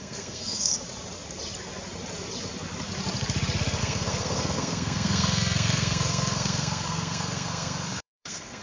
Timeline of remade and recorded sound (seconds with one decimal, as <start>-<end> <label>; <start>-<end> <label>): 0.0-0.7 remade; 0.7-3.8 recorded; 3.8-8.6 remade